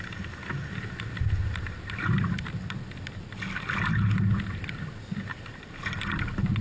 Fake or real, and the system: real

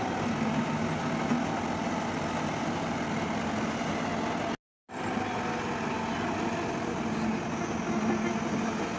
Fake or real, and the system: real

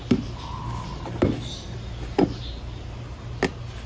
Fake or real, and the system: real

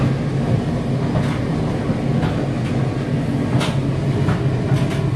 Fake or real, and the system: real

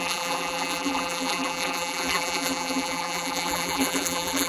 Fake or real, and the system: fake, vocoder, BigVGAN v2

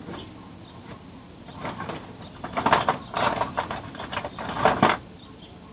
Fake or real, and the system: real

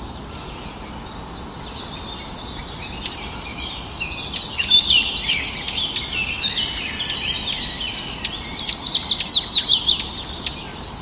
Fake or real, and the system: real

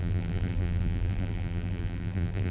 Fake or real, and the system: fake, vocoder, BigVGAN v2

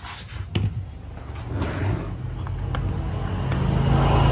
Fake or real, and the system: real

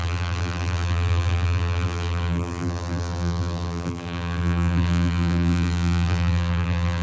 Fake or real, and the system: fake, vocoder, BigVGAN v2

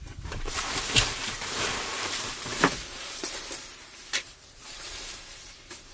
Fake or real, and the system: fake, vocoder, BigVGAN v2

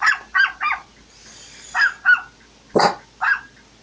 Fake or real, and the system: real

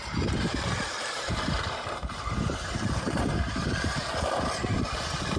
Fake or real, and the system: fake, vocoder, BigVGAN v2